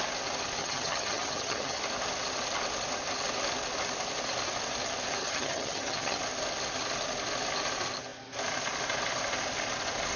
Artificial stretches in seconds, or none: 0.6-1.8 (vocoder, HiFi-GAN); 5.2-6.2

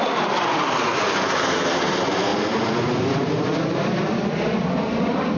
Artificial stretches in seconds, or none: none

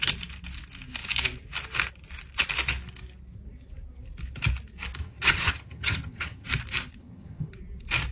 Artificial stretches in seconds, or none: 5.0-6.5 (vocoder, HiFi-GAN); 7.0-7.5

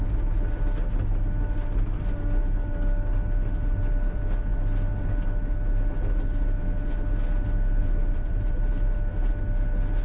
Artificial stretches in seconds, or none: 7.8-8.6 (vocoder, BigVGAN v2)